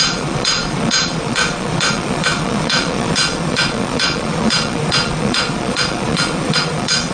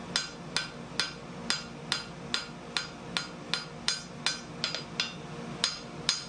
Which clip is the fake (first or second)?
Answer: first